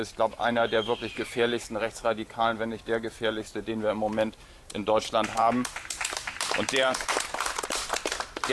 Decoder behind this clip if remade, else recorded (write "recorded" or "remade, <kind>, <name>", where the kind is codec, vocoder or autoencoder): remade, vocoder, BigVGAN v2